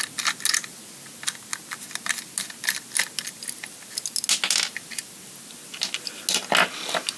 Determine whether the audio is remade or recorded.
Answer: recorded